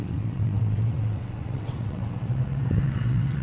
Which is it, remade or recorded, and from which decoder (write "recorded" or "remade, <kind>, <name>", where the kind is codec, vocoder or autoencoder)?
remade, vocoder, WaveNeXt